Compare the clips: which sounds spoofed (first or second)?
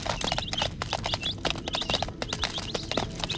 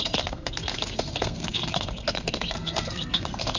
second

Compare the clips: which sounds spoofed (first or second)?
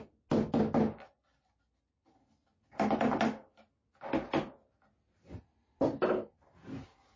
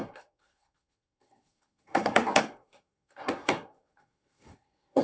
second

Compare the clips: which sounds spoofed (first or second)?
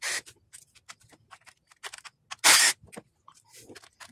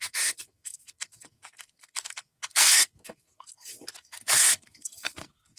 second